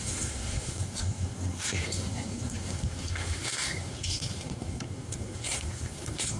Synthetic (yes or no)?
yes